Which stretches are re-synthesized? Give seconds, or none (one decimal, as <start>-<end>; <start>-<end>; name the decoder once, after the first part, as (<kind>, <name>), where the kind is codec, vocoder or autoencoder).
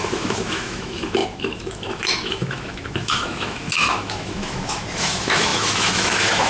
0.0-6.5 (autoencoder, DAC-VAE)